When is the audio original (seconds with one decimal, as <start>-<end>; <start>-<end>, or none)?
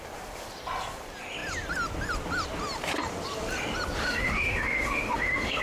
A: 0.0-4.0